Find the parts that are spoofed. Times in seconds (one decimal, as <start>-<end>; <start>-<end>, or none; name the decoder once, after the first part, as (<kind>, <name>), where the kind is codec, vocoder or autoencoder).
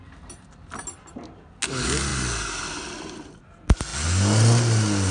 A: none